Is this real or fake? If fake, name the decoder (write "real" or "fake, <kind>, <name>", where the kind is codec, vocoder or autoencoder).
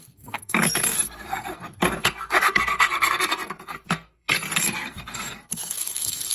fake, codec, SNAC